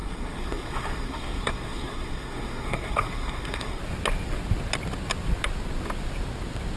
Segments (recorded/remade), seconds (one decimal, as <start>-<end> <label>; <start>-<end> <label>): 0.0-3.8 remade; 3.8-6.8 recorded